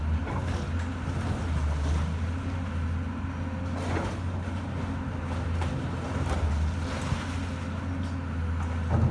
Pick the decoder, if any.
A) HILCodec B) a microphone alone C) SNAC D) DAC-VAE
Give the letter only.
B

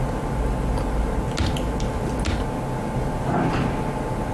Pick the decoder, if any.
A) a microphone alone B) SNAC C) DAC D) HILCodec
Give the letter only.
A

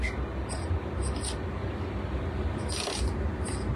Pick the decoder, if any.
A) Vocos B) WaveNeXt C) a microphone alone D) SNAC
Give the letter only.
C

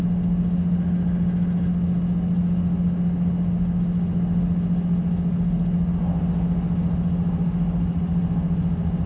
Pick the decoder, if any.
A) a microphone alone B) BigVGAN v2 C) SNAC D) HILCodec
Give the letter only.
A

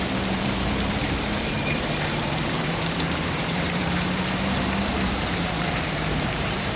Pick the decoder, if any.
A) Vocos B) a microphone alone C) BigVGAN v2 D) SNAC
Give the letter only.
C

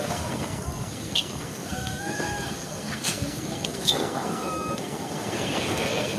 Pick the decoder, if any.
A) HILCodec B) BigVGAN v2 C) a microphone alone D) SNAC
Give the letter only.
D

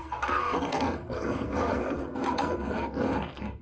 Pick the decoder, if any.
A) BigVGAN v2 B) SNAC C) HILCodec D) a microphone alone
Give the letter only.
B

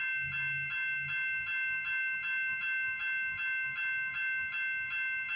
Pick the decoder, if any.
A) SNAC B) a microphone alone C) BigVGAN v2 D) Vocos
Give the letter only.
B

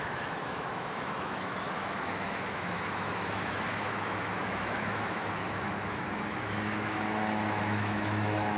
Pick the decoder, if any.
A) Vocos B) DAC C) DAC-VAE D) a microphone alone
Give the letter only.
C